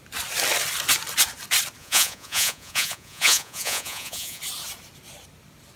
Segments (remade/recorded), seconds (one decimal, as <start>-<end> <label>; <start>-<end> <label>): 0.0-1.8 recorded; 1.8-4.4 remade; 4.4-5.8 recorded